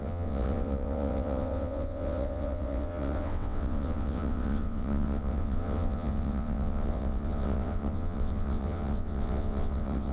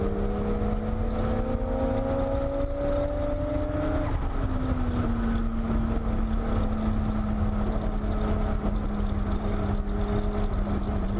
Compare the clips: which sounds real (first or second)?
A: second